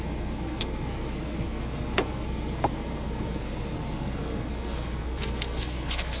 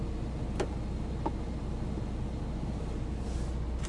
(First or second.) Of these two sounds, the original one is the second